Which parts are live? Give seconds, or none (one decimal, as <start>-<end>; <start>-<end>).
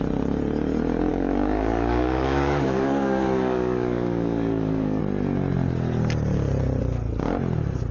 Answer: 0.0-1.1; 5.0-7.9